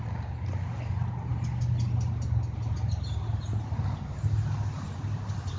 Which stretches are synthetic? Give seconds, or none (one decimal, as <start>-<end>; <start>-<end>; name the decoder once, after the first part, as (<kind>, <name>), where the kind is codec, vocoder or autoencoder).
none